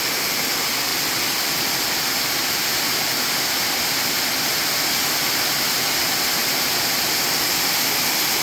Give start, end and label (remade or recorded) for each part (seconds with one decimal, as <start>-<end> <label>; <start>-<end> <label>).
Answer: 0.0-8.4 recorded

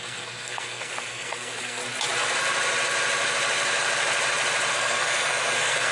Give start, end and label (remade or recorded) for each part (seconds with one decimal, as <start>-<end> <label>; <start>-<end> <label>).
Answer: 0.0-1.8 remade; 1.8-4.7 recorded; 4.7-5.9 remade